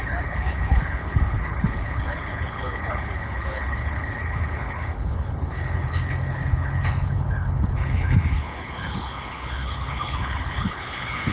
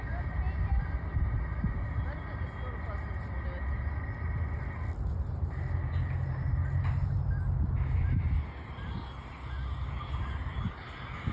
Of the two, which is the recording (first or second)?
second